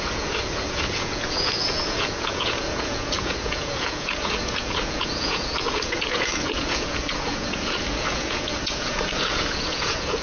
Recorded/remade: remade